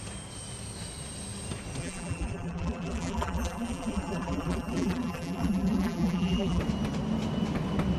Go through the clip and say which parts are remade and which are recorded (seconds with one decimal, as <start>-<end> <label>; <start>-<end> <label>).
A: 0.0-1.8 recorded; 1.8-6.6 remade; 6.6-8.0 recorded